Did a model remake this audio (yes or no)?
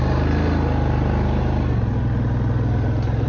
no